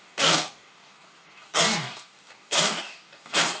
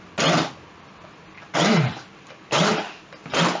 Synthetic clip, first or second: first